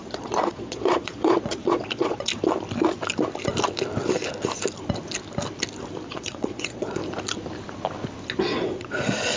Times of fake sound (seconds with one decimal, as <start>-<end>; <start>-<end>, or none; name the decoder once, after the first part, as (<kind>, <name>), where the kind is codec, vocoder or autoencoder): 0.0-2.3 (vocoder, Vocos); 6.1-7.0; 8.4-9.4